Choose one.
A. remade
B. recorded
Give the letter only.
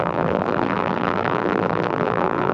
A